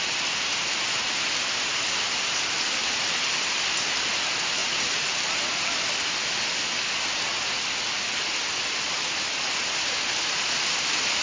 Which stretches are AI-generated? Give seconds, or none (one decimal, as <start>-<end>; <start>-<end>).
none